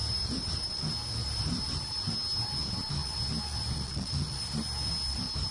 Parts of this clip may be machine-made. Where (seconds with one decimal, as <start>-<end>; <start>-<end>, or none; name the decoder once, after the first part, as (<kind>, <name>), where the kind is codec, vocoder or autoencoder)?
0.0-0.7 (vocoder, BigVGAN v2); 1.2-2.1